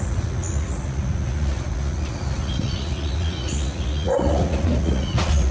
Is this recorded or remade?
remade